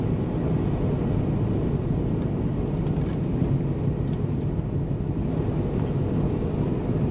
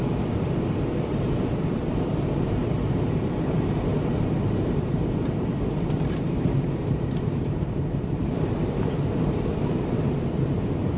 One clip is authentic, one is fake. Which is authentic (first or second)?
first